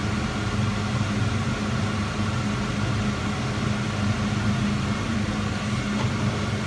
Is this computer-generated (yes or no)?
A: no